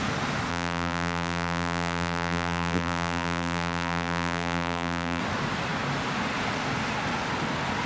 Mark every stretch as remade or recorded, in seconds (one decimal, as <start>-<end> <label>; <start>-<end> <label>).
0.0-0.5 recorded; 0.5-5.2 remade; 5.2-7.9 recorded